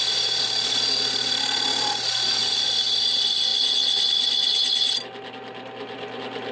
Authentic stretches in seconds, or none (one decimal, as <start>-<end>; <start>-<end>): 0.0-6.5